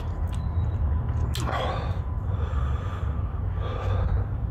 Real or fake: real